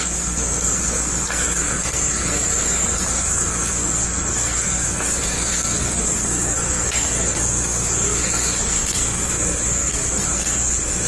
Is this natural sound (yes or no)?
no